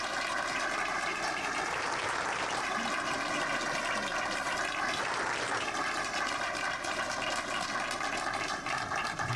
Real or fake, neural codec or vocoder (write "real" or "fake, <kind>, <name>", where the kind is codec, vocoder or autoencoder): fake, vocoder, BigVGAN v2